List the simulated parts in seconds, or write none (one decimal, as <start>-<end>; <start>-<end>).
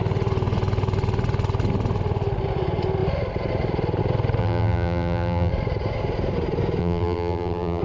4.4-5.5; 6.8-7.8